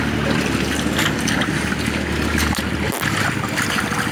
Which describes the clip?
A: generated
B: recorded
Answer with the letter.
B